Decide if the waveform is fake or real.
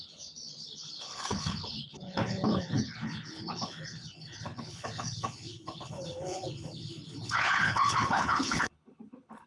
fake